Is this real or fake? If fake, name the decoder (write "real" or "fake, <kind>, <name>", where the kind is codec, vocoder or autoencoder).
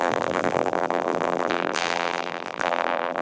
fake, vocoder, BigVGAN v2